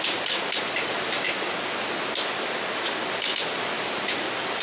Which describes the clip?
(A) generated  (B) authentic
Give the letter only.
B